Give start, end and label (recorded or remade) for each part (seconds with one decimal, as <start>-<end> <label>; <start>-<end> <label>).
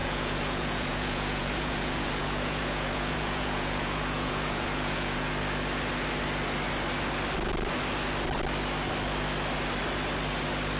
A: 0.0-5.3 remade; 5.3-10.8 recorded